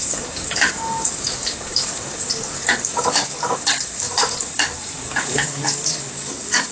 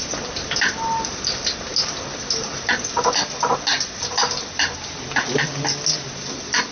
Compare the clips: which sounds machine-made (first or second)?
first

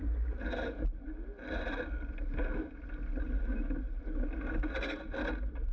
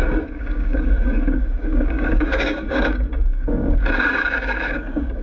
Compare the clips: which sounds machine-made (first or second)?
second